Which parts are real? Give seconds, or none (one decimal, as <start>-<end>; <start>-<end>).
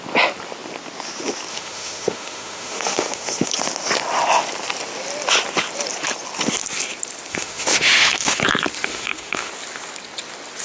0.0-1.5; 3.5-7.3; 8.4-8.9; 9.5-10.6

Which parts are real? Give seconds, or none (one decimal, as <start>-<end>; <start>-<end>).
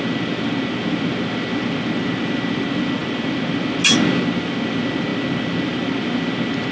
0.0-6.7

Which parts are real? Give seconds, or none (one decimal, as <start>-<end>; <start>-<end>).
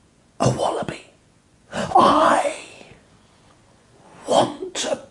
none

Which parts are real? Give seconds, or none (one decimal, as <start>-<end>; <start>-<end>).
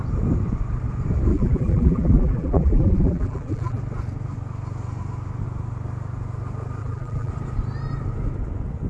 0.0-1.3; 3.8-6.8; 7.3-8.9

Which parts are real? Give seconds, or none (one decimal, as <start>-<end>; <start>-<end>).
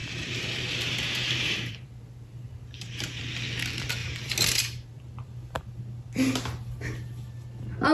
3.2-4.0; 5.8-7.9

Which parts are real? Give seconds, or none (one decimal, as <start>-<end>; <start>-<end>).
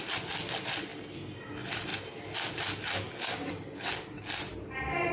0.0-5.1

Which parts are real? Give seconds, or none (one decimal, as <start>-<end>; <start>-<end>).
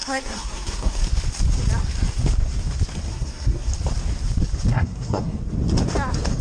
1.0-3.1; 3.7-4.7; 5.4-6.4